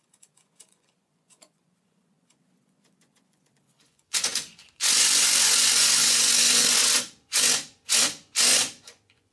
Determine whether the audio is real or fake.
fake